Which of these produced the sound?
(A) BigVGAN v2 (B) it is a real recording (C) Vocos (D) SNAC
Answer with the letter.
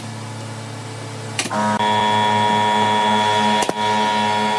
B